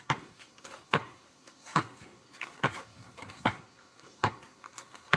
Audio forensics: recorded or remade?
remade